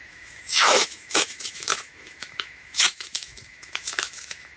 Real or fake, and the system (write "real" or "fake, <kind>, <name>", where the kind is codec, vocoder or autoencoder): fake, autoencoder, DAC-VAE